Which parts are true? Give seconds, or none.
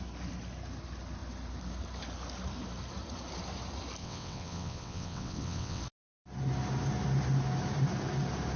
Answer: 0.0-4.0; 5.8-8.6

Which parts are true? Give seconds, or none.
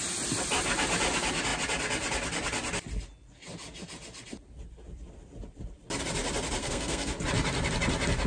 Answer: 0.0-6.6; 7.1-8.3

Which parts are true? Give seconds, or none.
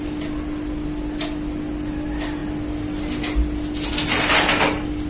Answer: 0.0-5.1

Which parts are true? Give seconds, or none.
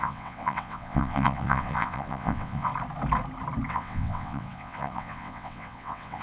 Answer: 2.7-3.7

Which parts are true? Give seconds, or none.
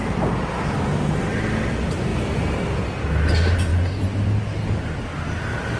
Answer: 0.8-2.1; 2.7-3.7; 4.4-5.8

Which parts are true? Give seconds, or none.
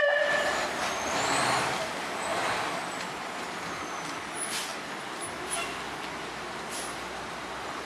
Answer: 0.0-7.8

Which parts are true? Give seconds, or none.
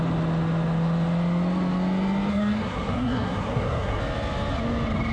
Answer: 0.0-2.3; 4.0-5.1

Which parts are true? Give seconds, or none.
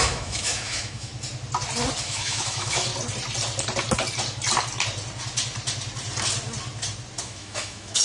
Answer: 1.1-2.0; 2.9-7.2